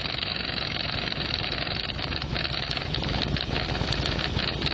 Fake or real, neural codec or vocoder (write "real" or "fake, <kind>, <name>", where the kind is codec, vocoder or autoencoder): fake, autoencoder, DAC-VAE